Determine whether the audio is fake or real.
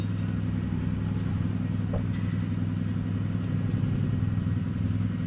real